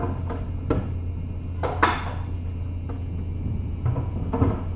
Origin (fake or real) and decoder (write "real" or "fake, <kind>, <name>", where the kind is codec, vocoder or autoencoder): real